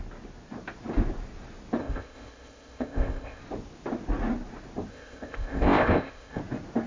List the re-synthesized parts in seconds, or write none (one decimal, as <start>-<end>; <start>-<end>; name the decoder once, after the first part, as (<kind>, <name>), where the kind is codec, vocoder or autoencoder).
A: 1.8-3.4 (codec, ZipCodec); 4.9-6.4